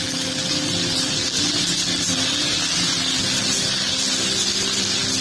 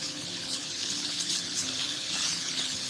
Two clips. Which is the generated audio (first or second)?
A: second